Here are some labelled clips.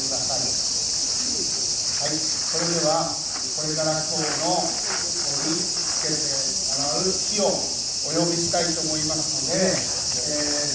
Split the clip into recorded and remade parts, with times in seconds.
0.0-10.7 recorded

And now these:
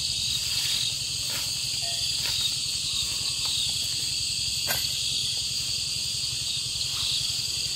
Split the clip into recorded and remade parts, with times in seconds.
0.0-2.1 recorded; 2.1-4.1 remade; 4.1-5.2 recorded; 5.2-6.5 remade; 6.5-7.8 recorded

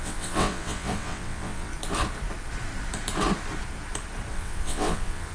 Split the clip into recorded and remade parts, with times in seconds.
0.0-1.7 remade; 1.7-4.3 recorded; 4.3-5.3 remade

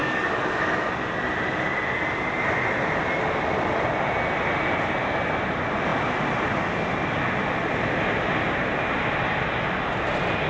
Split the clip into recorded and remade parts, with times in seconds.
0.0-1.1 remade; 1.1-10.5 recorded

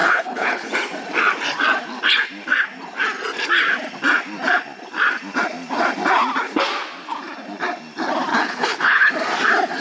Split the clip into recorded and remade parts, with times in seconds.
0.0-0.7 remade; 0.7-8.3 recorded; 8.3-9.1 remade; 9.1-9.8 recorded

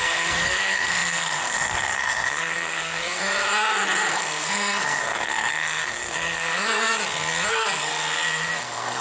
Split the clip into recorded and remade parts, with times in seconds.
0.0-3.2 remade; 3.2-4.1 recorded; 4.1-7.0 remade; 7.0-7.5 recorded; 7.5-7.9 remade; 7.9-8.6 recorded; 8.6-9.0 remade